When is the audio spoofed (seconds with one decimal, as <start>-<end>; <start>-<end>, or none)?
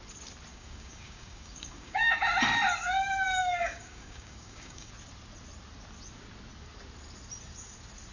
0.5-2.2; 3.4-4.9